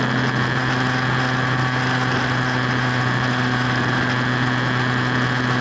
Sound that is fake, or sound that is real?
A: real